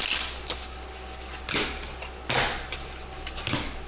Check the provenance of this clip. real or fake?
real